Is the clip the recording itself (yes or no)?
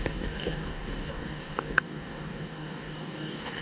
no